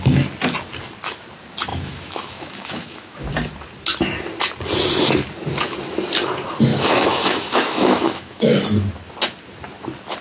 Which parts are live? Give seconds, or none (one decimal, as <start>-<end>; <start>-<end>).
0.0-1.7; 3.3-6.7; 8.6-10.2